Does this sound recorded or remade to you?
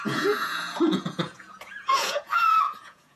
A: remade